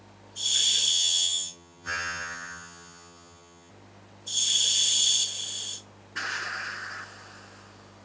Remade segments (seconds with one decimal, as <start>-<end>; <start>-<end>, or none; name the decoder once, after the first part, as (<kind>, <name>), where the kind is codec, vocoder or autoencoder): 0.9-3.7 (vocoder, HiFi-GAN)

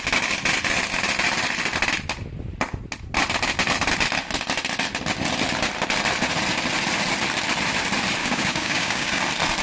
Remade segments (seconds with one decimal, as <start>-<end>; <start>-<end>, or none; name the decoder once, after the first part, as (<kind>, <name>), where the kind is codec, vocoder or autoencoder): 8.2-9.2 (codec, DAC)

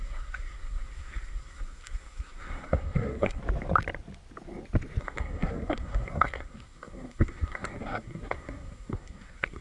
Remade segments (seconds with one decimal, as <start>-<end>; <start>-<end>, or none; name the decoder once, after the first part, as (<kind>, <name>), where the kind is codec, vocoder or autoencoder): 0.0-3.4 (codec, SNAC); 5.0-9.6

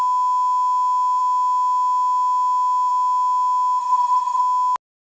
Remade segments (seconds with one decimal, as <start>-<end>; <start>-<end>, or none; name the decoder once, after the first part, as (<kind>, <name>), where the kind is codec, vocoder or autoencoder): 3.8-4.4 (vocoder, Vocos)

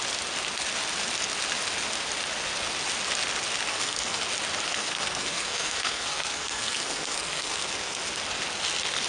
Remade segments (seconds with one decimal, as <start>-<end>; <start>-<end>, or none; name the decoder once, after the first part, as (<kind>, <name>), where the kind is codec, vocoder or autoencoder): 3.7-4.2 (codec, SNAC); 4.7-8.0

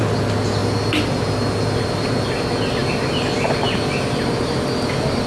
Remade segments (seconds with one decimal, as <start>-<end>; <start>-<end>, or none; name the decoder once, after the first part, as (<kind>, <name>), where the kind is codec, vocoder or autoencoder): none

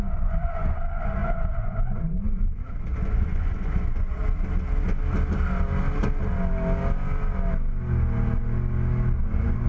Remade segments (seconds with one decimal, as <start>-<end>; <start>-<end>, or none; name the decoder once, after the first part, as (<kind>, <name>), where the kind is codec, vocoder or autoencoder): 0.0-4.2 (vocoder, Vocos); 9.2-9.7

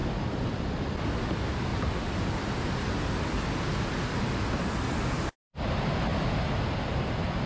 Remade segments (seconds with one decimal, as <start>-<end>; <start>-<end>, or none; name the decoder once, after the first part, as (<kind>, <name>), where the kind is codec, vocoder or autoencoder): none